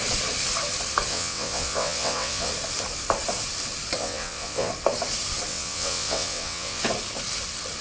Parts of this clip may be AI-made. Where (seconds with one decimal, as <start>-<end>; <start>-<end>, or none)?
1.1-2.5; 4.0-4.7; 5.5-6.8